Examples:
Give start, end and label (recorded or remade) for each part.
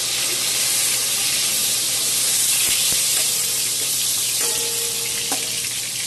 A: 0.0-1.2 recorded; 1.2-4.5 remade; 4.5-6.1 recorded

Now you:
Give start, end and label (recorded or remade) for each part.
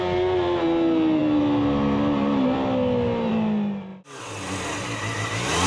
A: 0.0-5.7 recorded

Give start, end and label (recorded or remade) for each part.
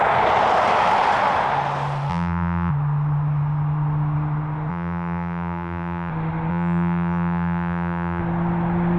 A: 0.0-2.1 recorded; 2.1-2.7 remade; 2.7-4.7 recorded; 4.7-6.1 remade; 6.1-6.5 recorded; 6.5-8.2 remade; 8.2-9.0 recorded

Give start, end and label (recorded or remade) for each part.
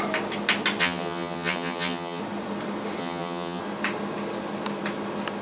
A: 0.0-0.8 recorded; 0.8-2.2 remade; 2.2-3.0 recorded; 3.0-3.6 remade; 3.6-5.4 recorded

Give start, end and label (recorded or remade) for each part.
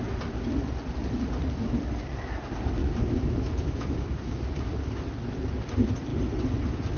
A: 0.0-2.8 recorded; 2.8-4.5 remade; 4.5-7.0 recorded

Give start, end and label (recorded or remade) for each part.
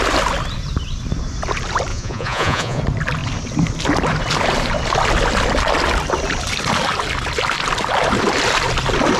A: 0.0-1.9 recorded; 1.9-2.8 remade; 2.8-9.2 recorded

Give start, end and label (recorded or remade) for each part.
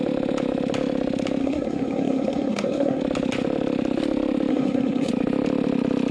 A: 0.0-1.4 recorded; 1.4-3.0 remade; 3.0-4.5 recorded; 4.5-5.1 remade; 5.1-6.1 recorded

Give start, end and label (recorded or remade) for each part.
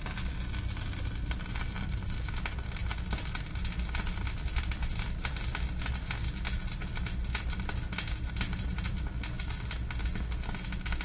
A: 0.0-11.0 recorded